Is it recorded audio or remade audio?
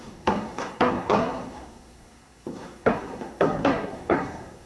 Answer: remade